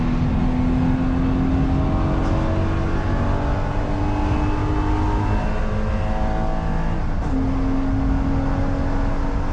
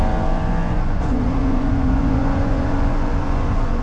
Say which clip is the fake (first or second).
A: second